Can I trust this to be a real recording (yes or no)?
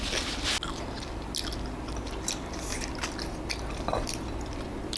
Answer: yes